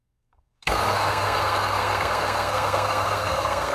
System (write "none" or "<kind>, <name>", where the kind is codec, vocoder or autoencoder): codec, SNAC